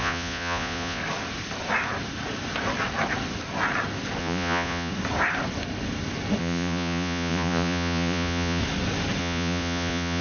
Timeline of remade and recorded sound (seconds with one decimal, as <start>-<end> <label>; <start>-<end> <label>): 0.0-1.0 remade; 1.0-4.2 recorded; 4.2-4.9 remade; 4.9-6.4 recorded; 6.4-8.6 remade; 8.6-9.2 recorded; 9.2-10.2 remade

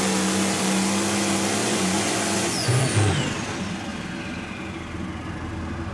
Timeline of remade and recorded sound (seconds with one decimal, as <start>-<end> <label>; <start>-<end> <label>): 0.0-1.6 recorded; 1.6-2.8 remade; 2.8-5.9 recorded

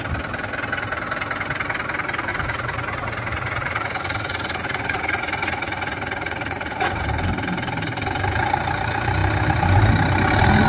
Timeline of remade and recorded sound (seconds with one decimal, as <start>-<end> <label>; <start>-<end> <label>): 0.0-2.3 recorded; 2.3-7.0 remade; 7.0-10.7 recorded

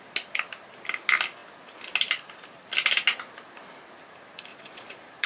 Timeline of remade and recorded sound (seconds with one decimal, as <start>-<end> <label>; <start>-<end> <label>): 0.0-4.5 recorded; 4.5-5.3 remade

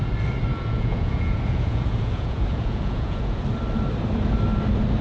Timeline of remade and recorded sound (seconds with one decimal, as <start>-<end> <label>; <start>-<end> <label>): 0.0-0.5 recorded; 0.5-3.4 remade; 3.4-5.0 recorded